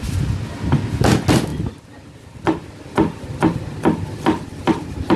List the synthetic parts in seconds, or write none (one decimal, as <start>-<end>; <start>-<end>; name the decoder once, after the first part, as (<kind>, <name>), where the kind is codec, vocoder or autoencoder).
none